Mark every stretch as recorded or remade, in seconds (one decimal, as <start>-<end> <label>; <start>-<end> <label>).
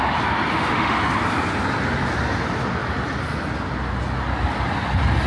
0.0-0.5 recorded; 0.5-1.0 remade; 1.0-5.3 recorded